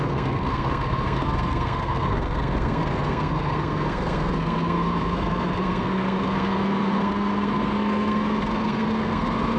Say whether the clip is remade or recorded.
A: remade